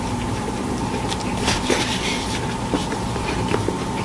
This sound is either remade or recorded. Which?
remade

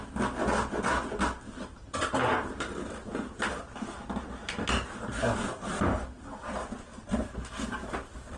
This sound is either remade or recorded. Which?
recorded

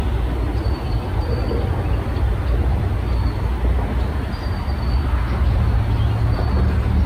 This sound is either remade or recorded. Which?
recorded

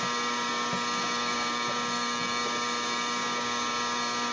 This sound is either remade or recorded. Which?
remade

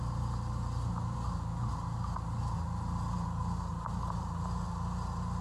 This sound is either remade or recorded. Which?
recorded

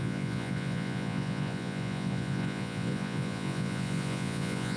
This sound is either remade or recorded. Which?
remade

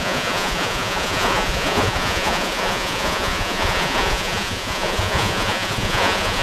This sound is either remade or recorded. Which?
remade